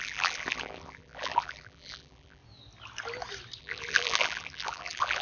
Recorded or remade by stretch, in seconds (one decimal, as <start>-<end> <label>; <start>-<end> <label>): 0.0-2.4 remade; 2.4-3.6 recorded; 3.6-5.2 remade